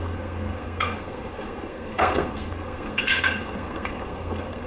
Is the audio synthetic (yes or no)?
yes